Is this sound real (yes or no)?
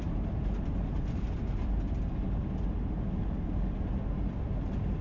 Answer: yes